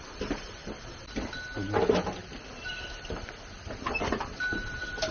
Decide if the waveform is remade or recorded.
recorded